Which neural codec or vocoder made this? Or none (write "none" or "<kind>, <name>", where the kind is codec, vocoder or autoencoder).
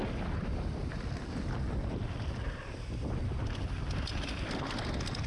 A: none